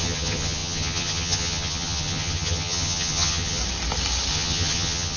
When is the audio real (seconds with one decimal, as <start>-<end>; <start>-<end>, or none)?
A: 3.6-4.3